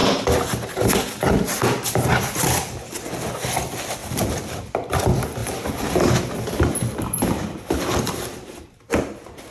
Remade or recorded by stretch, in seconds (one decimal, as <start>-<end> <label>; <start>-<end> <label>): 0.0-3.3 recorded; 3.3-4.0 remade; 4.0-4.6 recorded; 4.6-5.4 remade; 5.4-6.6 recorded; 6.6-9.5 remade